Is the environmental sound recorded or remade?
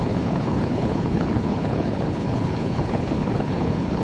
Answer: remade